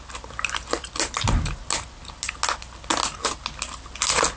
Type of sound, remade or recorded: recorded